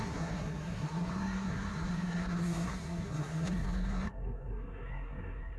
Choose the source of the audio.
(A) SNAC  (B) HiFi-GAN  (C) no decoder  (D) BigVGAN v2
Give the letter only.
A